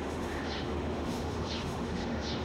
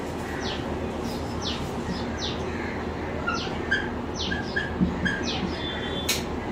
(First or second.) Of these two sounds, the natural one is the second